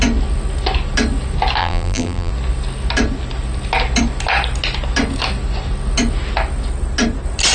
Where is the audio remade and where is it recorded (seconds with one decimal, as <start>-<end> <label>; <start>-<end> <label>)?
0.0-1.6 recorded; 1.6-2.3 remade; 2.3-7.5 recorded